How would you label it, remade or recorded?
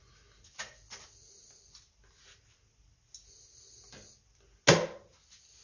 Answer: recorded